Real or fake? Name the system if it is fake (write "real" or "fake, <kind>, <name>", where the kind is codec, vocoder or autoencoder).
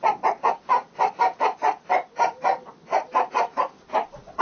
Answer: real